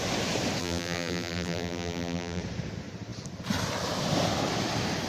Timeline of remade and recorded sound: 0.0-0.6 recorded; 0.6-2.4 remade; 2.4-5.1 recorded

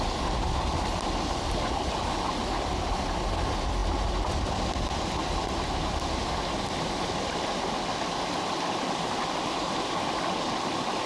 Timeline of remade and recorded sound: 0.0-11.1 recorded

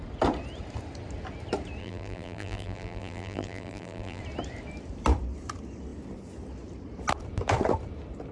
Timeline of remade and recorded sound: 0.0-1.8 recorded; 1.8-4.2 remade; 4.2-8.3 recorded

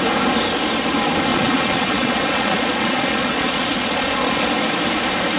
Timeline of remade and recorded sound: 0.0-1.3 recorded; 1.3-4.5 remade; 4.5-5.4 recorded

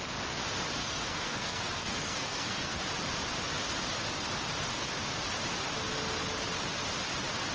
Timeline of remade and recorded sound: 0.0-0.8 recorded; 0.8-2.8 remade; 2.8-7.5 recorded